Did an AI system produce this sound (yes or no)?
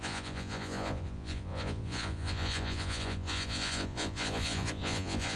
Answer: yes